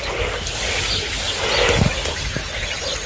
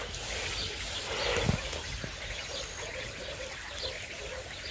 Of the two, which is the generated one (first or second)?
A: second